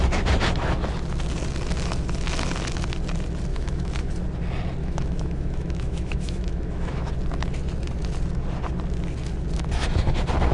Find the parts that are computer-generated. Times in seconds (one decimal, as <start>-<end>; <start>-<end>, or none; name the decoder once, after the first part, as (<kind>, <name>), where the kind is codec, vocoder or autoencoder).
3.5-4.1 (autoencoder, DAC-VAE); 4.8-7.1